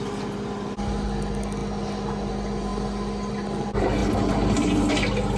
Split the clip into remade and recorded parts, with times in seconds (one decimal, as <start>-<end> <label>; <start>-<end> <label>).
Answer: 0.0-5.4 recorded